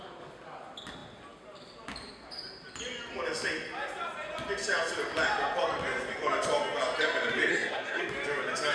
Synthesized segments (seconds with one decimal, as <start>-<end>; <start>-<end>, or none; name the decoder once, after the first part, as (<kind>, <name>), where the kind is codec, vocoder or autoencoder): 7.5-8.0 (codec, SNAC)